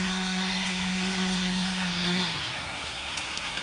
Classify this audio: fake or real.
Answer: fake